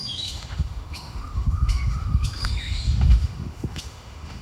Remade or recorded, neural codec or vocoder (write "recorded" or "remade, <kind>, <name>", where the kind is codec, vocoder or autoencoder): remade, autoencoder, DAC-VAE